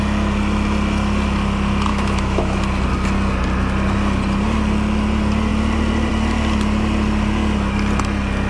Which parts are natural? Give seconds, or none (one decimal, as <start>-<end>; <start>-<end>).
0.0-1.9; 2.6-8.5